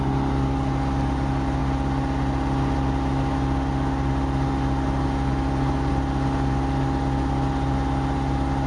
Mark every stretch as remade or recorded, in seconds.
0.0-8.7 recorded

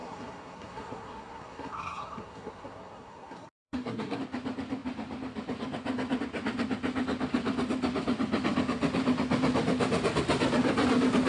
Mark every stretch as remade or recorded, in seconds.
0.0-4.2 remade; 4.2-11.3 recorded